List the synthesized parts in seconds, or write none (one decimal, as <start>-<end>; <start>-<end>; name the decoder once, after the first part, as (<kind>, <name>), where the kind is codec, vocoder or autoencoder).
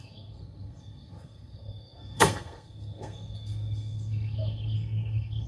0.0-5.5 (codec, SNAC)